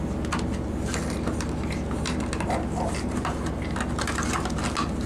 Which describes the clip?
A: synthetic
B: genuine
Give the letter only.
B